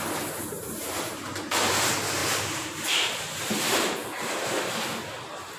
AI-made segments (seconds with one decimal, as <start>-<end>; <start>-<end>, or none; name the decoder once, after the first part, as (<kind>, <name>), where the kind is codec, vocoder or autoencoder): 0.5-1.7 (vocoder, BigVGAN v2); 2.2-5.6